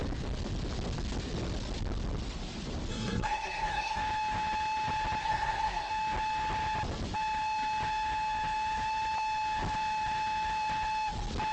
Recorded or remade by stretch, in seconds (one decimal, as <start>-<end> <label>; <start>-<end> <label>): 0.0-2.9 recorded; 2.9-4.0 remade; 4.0-5.2 recorded; 5.2-5.9 remade; 5.9-11.5 recorded